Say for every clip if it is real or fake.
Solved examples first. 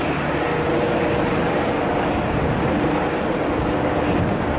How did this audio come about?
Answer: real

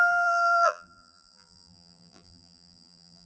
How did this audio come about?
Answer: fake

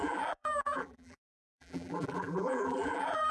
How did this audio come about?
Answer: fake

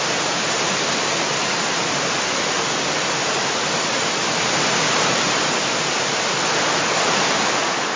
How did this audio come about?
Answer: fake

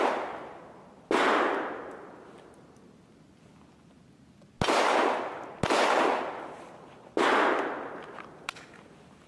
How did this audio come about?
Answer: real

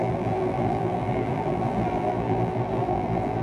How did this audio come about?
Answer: fake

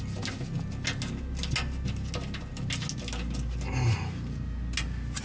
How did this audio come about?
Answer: real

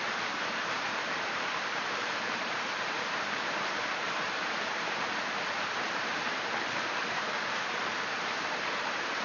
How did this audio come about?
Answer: fake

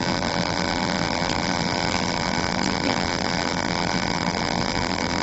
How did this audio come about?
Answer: fake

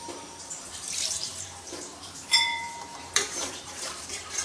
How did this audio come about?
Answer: fake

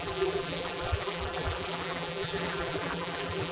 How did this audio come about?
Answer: fake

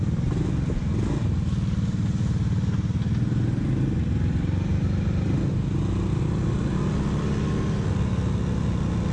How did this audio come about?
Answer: real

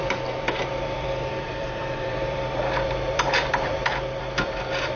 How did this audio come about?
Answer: fake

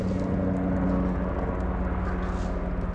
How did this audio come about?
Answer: real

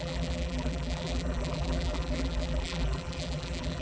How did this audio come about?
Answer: fake